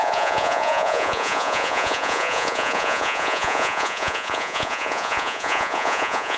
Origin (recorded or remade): remade